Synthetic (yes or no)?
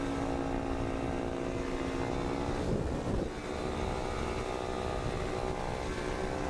no